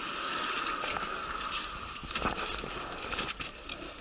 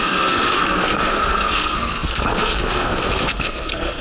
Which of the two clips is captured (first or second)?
first